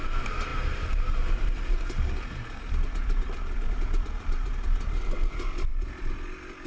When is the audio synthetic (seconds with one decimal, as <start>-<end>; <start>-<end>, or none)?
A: 0.5-4.5; 5.7-6.7